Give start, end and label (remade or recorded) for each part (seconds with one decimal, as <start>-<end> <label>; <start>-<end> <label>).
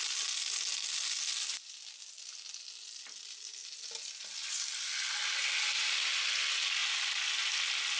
0.0-8.0 recorded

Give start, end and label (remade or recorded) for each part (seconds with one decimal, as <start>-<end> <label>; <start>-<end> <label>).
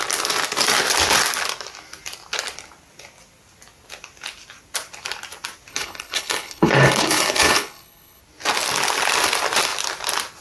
0.0-5.7 recorded; 5.7-8.2 remade; 8.2-10.4 recorded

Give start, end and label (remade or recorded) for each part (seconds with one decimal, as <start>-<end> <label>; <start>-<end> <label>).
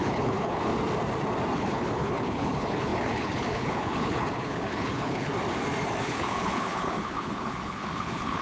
0.0-0.7 remade; 0.7-1.5 recorded; 1.5-5.3 remade; 5.3-6.0 recorded; 6.0-8.4 remade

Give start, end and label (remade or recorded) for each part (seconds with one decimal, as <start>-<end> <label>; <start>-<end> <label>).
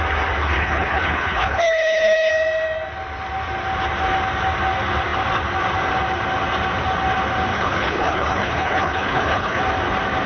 0.0-0.4 recorded; 0.4-2.3 remade; 2.3-7.5 recorded; 7.5-9.6 remade; 9.6-10.3 recorded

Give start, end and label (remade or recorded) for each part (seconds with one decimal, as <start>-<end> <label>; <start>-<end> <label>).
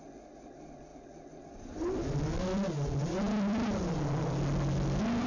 0.0-5.3 recorded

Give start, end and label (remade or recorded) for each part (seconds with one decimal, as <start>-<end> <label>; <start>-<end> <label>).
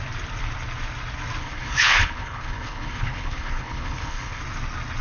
0.0-1.4 recorded; 1.4-4.4 remade; 4.4-5.0 recorded